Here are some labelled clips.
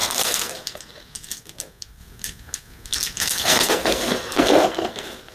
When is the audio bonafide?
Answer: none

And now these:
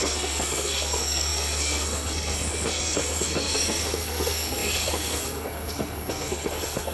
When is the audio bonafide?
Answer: none